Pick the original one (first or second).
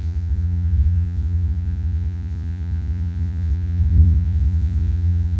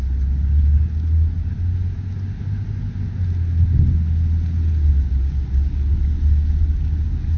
second